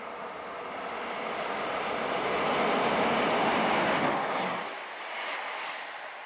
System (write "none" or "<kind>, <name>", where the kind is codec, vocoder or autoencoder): none